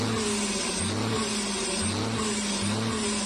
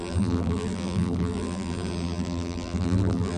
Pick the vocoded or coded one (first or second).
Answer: second